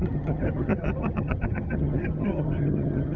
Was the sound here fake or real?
fake